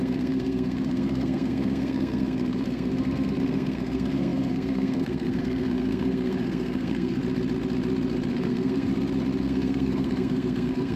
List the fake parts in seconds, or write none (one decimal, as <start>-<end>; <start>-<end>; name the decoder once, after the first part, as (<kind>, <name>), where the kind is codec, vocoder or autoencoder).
0.0-7.2 (codec, SNAC); 8.3-8.9; 9.4-11.0